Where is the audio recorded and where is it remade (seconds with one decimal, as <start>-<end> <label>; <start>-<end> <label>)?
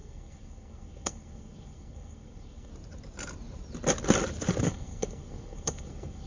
0.0-2.7 remade; 2.7-4.6 recorded; 4.6-6.3 remade